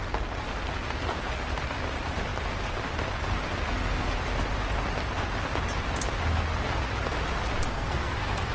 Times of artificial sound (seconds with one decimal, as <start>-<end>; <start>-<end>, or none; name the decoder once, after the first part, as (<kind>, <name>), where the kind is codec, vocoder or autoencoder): 7.7-8.5 (codec, SNAC)